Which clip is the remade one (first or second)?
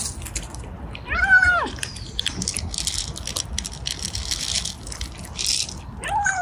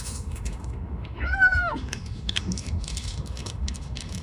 second